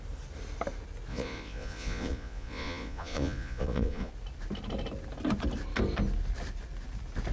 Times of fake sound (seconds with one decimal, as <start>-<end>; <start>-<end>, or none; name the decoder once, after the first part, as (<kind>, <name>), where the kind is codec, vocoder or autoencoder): 1.1-4.1 (vocoder, Vocos)